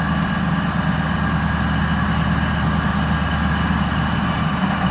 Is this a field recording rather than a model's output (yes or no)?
yes